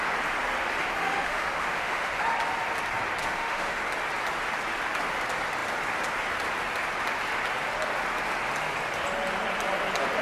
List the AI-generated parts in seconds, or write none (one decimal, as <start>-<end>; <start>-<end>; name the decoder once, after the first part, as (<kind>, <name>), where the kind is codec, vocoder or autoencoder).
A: 1.0-2.1 (autoencoder, DAC-VAE); 3.2-3.8